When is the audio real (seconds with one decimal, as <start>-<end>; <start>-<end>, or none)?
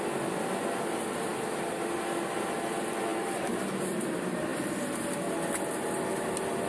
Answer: 4.5-5.7